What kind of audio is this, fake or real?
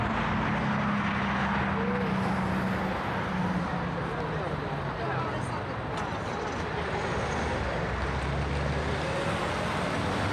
real